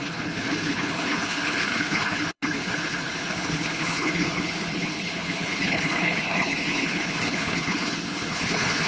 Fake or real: fake